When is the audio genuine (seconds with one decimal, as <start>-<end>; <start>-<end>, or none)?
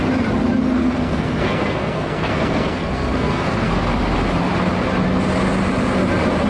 0.0-0.8; 3.8-6.5